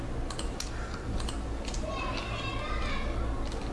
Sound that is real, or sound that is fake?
real